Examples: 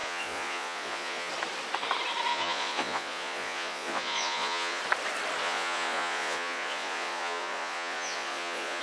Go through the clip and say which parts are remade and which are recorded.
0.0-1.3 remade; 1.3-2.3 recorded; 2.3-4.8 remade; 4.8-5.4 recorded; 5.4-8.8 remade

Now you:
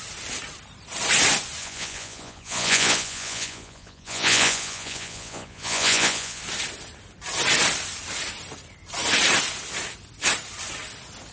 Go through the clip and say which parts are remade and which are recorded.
0.0-1.6 recorded; 1.6-6.4 remade; 6.4-11.3 recorded

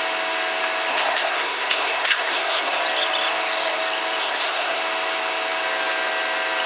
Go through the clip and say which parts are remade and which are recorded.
0.0-0.9 recorded; 0.9-2.8 remade; 2.8-4.2 recorded; 4.2-4.8 remade; 4.8-6.7 recorded

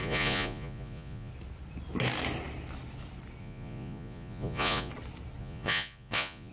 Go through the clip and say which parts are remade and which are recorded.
0.0-1.3 remade; 1.3-3.4 recorded; 3.4-4.9 remade; 4.9-5.4 recorded; 5.4-6.5 remade

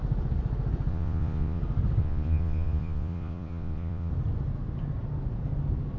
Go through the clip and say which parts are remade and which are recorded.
0.0-0.9 recorded; 0.9-1.6 remade; 1.6-2.0 recorded; 2.0-4.1 remade; 4.1-6.0 recorded